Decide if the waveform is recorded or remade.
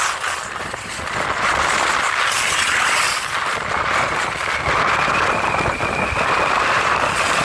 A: remade